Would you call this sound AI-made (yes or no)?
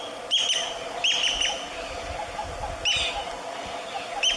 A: no